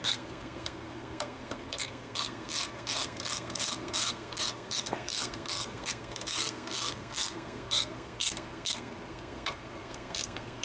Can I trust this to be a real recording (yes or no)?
no